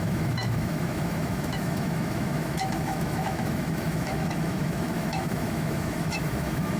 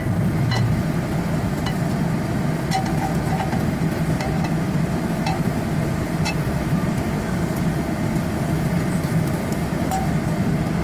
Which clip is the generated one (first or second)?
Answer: first